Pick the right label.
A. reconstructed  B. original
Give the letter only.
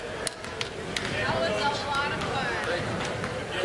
B